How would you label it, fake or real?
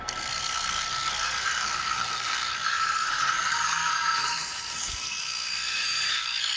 fake